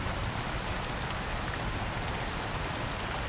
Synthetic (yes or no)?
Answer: yes